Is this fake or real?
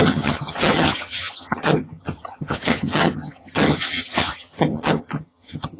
fake